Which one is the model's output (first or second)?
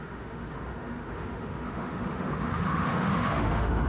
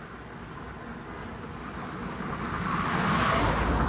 first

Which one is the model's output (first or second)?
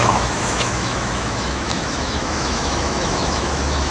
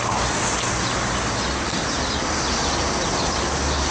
first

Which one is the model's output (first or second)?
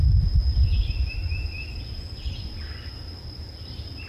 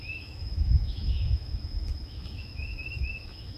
second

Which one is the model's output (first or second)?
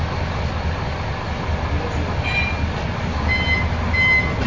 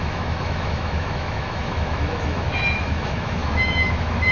second